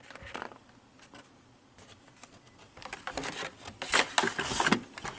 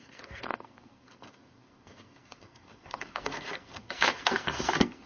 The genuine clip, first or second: first